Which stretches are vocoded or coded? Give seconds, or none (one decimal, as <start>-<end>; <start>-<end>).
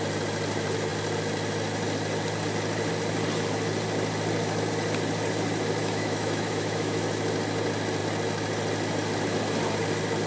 5.8-7.0